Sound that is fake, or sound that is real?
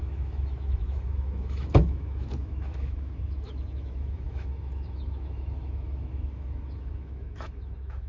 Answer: fake